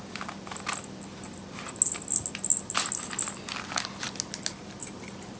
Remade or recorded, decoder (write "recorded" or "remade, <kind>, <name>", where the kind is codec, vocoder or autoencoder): recorded